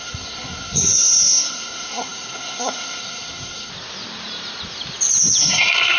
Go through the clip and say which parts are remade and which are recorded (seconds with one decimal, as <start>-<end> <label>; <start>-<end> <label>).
0.0-3.7 remade; 3.7-5.4 recorded; 5.4-6.0 remade